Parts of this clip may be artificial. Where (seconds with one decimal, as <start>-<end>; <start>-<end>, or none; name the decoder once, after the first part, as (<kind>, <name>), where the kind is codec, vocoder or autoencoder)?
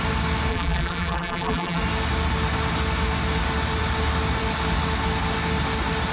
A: 0.5-1.8 (vocoder, BigVGAN v2)